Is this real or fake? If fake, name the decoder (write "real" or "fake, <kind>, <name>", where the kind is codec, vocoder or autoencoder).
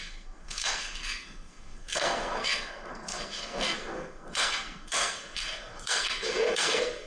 fake, codec, SNAC